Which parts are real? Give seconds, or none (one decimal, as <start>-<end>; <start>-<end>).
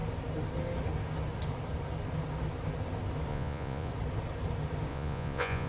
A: 0.0-3.3; 3.9-4.9